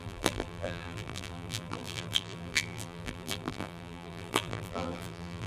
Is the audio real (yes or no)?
no